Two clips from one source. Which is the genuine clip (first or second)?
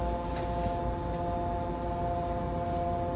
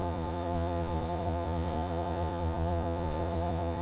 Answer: first